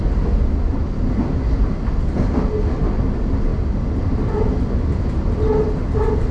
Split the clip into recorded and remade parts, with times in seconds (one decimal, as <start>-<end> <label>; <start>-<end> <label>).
0.0-6.3 recorded